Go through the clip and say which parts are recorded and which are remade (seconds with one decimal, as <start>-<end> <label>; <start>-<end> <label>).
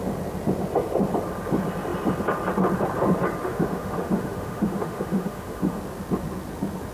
0.0-3.4 recorded; 3.4-5.8 remade; 5.8-6.9 recorded